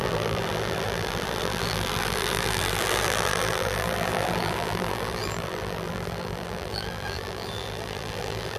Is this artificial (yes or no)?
yes